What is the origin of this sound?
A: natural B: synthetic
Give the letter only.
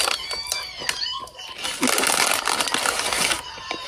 A